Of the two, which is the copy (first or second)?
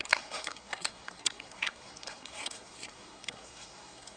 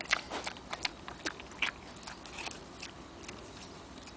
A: first